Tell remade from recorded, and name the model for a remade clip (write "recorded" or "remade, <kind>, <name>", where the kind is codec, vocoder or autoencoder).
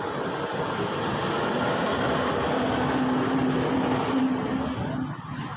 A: recorded